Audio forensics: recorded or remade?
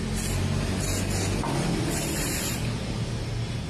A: recorded